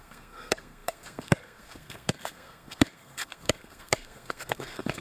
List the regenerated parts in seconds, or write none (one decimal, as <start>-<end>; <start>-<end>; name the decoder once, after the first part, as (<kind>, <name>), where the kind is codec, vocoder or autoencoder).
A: 0.0-5.0 (codec, SNAC)